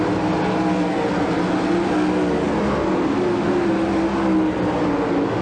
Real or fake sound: real